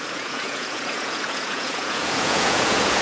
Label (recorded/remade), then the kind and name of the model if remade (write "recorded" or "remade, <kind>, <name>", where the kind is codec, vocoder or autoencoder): remade, vocoder, Vocos